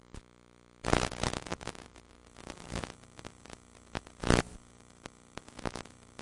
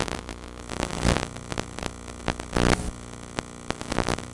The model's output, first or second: first